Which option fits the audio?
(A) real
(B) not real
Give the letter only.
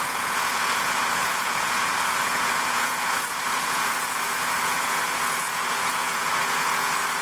B